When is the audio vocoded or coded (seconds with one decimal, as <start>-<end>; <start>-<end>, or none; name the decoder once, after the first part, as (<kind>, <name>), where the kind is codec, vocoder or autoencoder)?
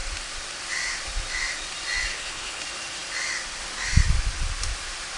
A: 2.1-2.6 (codec, HILCodec)